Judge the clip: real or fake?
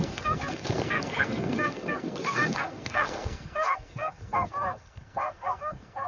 fake